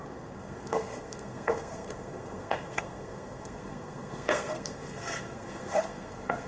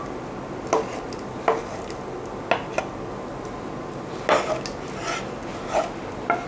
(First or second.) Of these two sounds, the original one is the second